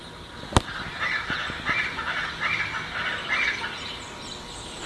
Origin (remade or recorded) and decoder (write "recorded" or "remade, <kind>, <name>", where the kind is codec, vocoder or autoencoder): recorded